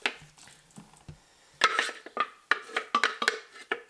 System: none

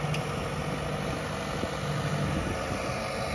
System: none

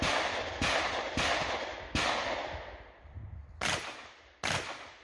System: none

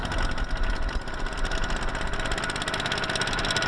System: none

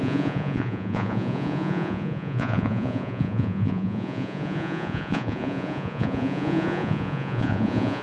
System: vocoder, Vocos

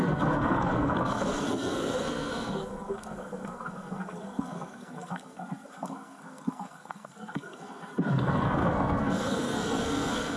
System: codec, SNAC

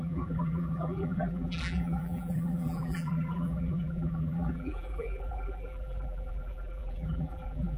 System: vocoder, BigVGAN v2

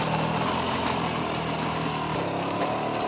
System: none